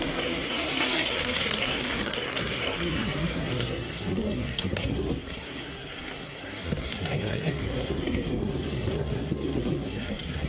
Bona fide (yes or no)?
no